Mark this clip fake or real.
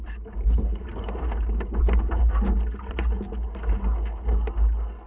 real